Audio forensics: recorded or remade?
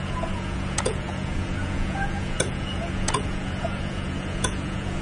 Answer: remade